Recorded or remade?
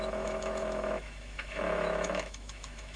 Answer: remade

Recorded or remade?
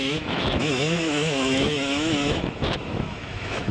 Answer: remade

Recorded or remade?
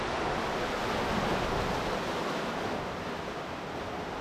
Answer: recorded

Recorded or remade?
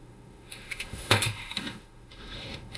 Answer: remade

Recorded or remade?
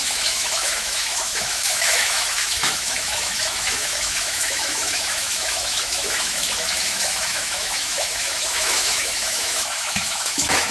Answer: remade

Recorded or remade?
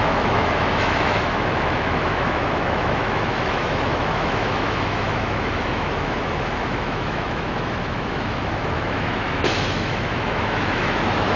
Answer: remade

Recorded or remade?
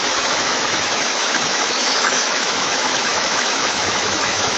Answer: remade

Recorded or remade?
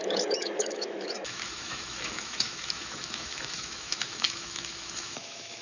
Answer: remade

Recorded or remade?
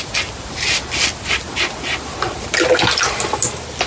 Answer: recorded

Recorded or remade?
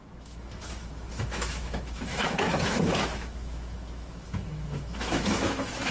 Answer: remade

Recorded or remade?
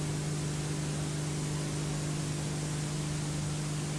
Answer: recorded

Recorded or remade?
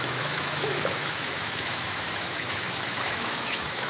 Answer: remade